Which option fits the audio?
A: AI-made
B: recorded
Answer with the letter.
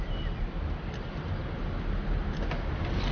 B